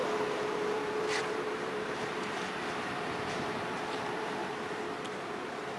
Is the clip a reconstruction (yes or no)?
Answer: yes